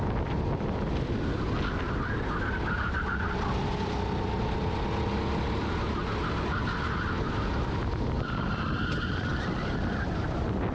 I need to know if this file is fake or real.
real